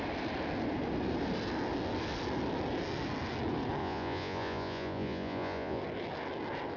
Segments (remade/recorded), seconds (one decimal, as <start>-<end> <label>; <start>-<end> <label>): 0.0-3.8 recorded; 3.8-5.8 remade; 5.8-6.8 recorded